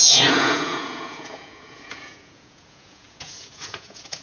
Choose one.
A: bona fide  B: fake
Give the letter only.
B